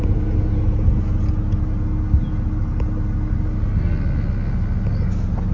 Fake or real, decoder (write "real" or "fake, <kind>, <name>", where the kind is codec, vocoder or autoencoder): real